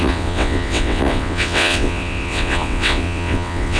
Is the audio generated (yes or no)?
yes